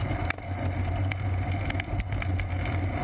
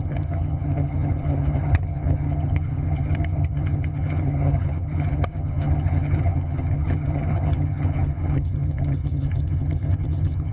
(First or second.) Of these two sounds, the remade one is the second